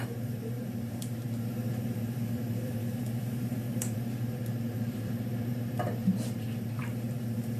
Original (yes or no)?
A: no